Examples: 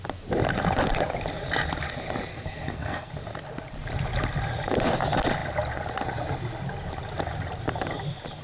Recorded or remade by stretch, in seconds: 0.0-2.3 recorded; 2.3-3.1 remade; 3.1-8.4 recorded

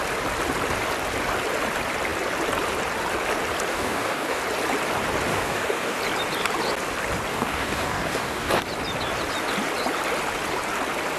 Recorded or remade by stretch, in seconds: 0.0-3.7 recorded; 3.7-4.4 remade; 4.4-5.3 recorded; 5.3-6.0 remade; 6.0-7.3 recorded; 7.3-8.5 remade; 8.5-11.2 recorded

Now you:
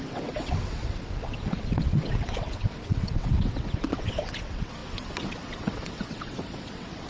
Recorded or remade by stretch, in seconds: 0.0-7.1 remade